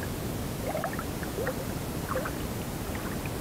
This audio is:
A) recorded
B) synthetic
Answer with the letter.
A